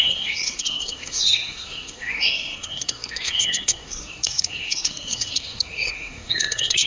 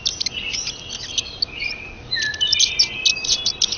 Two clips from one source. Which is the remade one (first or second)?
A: first